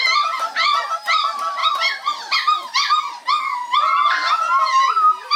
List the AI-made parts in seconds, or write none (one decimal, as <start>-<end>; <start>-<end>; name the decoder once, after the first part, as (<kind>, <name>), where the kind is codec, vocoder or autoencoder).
1.6-2.2 (vocoder, BigVGAN v2)